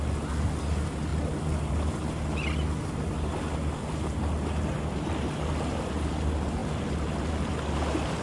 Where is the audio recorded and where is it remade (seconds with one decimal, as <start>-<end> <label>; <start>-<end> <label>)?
0.0-8.2 recorded